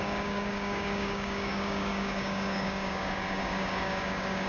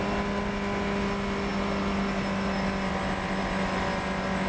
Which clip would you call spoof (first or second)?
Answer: first